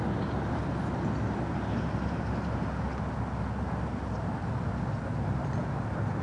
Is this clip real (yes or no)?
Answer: yes